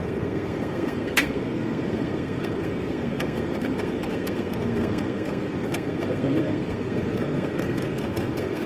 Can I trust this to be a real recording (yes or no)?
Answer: no